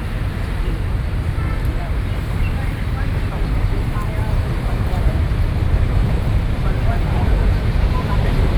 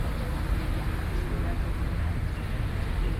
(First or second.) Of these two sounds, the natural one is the second